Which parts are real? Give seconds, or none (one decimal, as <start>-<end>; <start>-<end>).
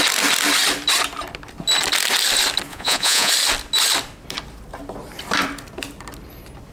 0.0-2.7; 3.3-6.7